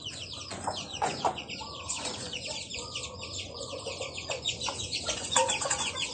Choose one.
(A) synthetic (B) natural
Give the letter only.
A